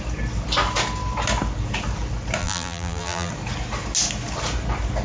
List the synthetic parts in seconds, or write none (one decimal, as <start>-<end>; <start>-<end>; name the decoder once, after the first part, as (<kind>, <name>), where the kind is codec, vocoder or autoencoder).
2.4-3.3 (vocoder, BigVGAN v2)